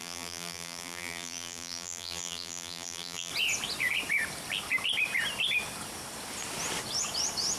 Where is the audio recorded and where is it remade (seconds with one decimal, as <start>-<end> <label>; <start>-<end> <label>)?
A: 0.0-3.3 remade; 3.3-7.6 recorded